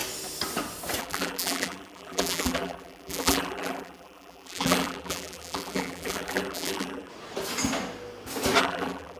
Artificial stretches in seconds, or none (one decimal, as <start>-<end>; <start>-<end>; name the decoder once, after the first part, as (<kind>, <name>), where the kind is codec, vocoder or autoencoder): 1.0-7.1 (vocoder, BigVGAN v2); 8.6-9.2